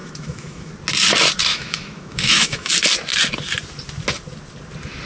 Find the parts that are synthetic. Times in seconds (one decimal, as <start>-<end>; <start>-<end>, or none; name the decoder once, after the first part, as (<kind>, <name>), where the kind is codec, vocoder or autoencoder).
0.0-0.7 (autoencoder, DAC-VAE); 1.5-2.7

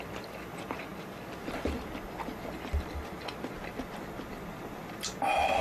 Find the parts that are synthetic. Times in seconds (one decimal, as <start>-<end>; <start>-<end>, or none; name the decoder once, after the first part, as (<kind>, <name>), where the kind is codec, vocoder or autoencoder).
none

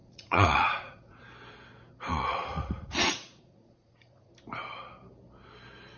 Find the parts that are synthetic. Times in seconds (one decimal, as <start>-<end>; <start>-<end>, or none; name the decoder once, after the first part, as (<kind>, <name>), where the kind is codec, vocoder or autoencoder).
0.0-1.2 (vocoder, Vocos); 2.1-4.3

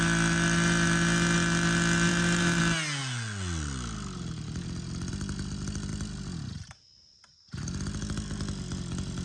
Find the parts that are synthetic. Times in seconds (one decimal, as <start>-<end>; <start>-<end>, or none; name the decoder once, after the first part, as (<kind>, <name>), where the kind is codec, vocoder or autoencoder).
2.1-2.6 (vocoder, BigVGAN v2)

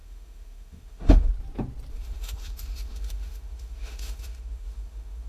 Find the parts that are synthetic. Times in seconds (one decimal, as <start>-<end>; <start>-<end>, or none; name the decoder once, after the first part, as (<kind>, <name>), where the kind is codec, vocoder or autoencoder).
0.0-1.3 (autoencoder, DAC-VAE); 1.9-5.3

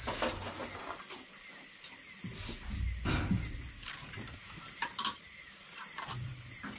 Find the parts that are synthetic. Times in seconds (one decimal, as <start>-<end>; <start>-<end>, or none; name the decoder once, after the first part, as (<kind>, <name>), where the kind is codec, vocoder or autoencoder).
4.4-6.3 (vocoder, BigVGAN v2)